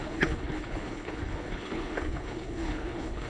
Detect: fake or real fake